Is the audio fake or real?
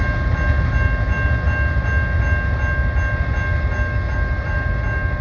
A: real